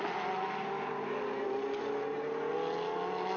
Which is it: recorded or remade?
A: recorded